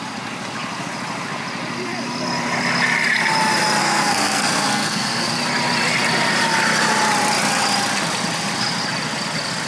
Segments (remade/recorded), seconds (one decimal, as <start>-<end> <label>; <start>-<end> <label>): 0.0-3.8 recorded; 3.8-5.3 remade; 5.3-9.7 recorded